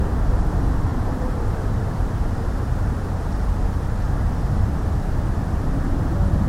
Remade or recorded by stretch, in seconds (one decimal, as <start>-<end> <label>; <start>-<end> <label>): 0.0-0.9 recorded; 0.9-4.3 remade; 4.3-6.5 recorded